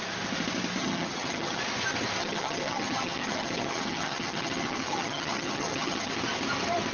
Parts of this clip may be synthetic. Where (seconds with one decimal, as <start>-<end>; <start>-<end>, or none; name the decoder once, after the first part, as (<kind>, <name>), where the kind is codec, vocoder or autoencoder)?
0.8-1.6 (vocoder, HiFi-GAN); 2.2-6.1